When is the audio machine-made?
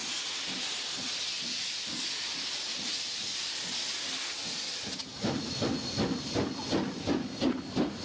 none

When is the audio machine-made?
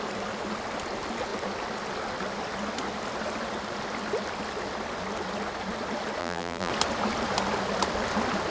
6.2-6.7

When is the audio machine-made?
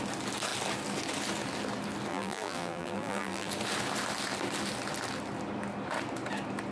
2.1-3.5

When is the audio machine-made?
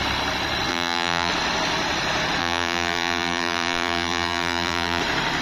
0.7-1.3; 2.4-5.0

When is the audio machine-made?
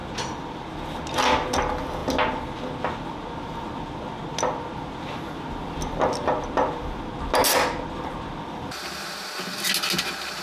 none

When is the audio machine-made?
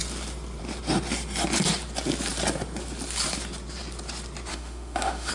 4.5-5.3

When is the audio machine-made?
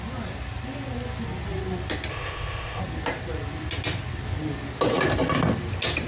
2.1-2.8